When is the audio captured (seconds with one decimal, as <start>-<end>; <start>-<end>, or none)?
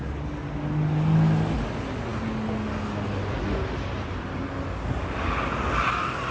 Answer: 0.0-6.3